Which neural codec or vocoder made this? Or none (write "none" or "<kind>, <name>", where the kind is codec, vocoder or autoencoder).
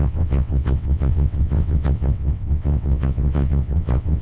vocoder, WaveNeXt